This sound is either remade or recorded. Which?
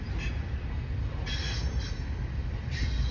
recorded